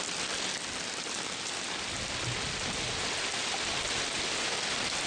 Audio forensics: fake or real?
real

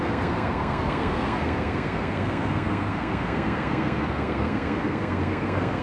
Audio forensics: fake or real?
fake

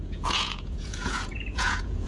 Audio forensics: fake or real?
fake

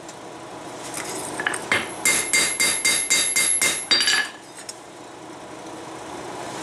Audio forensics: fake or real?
real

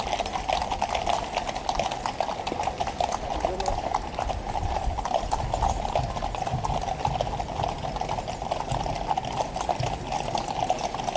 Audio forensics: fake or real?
real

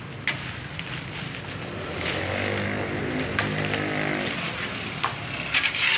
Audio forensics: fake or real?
real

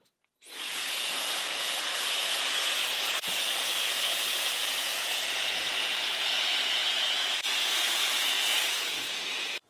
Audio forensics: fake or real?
fake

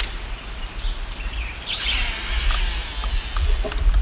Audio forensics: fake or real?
real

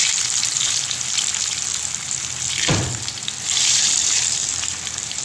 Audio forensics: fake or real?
fake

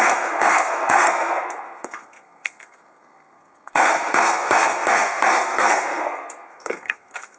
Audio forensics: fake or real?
fake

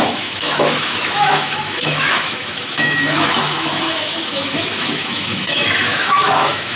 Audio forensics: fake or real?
fake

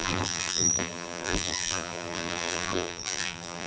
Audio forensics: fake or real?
fake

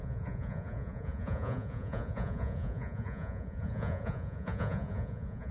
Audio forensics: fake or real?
fake